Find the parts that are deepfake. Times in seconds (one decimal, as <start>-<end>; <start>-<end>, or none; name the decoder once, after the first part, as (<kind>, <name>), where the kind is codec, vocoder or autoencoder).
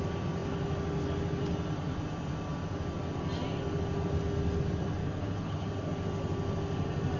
5.0-5.7 (codec, HILCodec)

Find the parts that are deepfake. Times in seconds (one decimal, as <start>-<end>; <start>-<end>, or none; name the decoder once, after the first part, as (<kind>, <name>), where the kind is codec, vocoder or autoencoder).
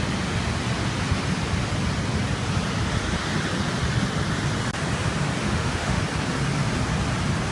5.4-6.0 (autoencoder, DAC-VAE)